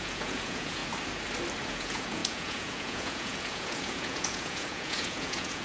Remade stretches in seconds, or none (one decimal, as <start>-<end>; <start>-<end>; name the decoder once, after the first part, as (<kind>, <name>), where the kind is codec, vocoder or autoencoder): 0.0-0.8 (vocoder, Vocos); 1.7-5.6

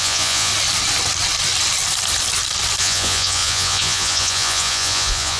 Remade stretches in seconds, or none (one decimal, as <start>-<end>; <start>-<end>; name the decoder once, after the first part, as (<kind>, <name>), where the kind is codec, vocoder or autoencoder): 0.0-0.5 (vocoder, Vocos); 2.8-5.4

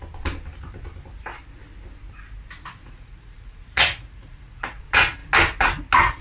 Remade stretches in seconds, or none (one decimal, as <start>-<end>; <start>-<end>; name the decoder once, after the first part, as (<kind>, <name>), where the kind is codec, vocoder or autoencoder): 2.8-4.8 (vocoder, Vocos)

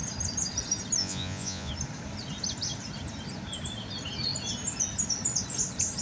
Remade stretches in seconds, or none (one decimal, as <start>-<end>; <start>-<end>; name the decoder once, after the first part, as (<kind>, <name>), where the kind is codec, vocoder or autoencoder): 1.0-1.7 (vocoder, Vocos)

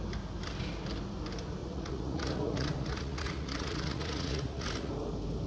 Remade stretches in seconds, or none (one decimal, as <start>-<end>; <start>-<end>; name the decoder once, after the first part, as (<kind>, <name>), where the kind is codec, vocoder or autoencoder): 1.6-4.9 (vocoder, Vocos)

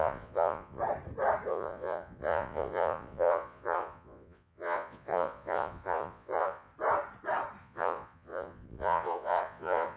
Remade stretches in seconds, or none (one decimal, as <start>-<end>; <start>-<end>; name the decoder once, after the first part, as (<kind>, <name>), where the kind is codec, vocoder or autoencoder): 0.0-0.8 (vocoder, Vocos); 1.5-6.7; 7.6-10.0